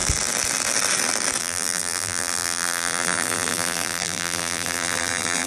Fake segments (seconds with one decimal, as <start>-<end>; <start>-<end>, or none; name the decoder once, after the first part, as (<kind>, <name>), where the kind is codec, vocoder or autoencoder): 1.4-5.5 (vocoder, BigVGAN v2)

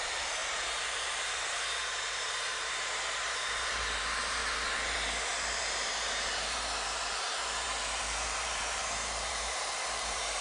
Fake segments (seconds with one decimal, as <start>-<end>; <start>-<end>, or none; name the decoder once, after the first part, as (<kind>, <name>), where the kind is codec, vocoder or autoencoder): 0.0-4.4 (vocoder, BigVGAN v2); 5.5-8.8; 9.3-10.4

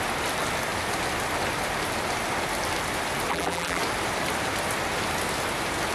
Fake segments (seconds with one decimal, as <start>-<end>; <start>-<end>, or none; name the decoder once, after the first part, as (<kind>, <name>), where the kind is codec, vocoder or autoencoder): 3.3-3.8 (vocoder, BigVGAN v2)

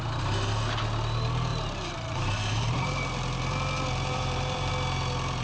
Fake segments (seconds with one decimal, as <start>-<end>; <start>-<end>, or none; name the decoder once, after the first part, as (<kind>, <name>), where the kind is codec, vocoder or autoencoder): 1.5-4.7 (vocoder, BigVGAN v2)

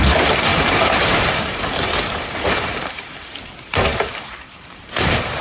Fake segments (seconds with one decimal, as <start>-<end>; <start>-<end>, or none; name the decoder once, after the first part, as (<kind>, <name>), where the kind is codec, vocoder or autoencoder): 0.0-5.4 (vocoder, BigVGAN v2)

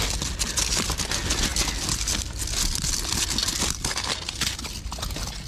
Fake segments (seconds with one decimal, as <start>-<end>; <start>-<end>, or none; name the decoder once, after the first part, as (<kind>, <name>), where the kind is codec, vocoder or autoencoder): none

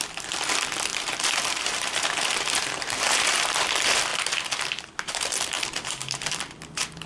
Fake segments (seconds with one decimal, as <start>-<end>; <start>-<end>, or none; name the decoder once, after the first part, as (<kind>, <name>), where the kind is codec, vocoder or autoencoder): 0.9-3.6 (vocoder, BigVGAN v2); 4.1-6.3

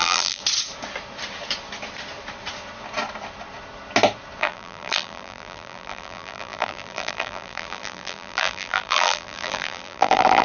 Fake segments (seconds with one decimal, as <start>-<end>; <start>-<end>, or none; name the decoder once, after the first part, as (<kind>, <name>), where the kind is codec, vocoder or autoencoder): 0.0-0.4 (vocoder, BigVGAN v2); 4.4-10.4